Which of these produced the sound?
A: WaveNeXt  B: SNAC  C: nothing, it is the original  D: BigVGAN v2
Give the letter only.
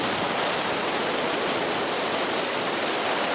C